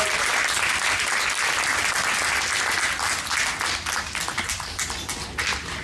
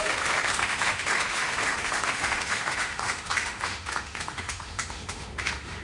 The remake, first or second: second